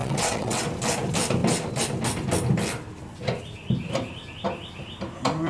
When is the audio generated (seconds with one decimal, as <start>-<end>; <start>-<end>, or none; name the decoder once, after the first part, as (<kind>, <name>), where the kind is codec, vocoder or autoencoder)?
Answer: 0.0-0.6 (vocoder, WaveNeXt)